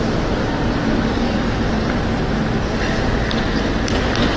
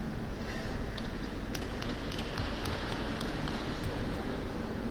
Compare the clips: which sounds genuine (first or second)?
first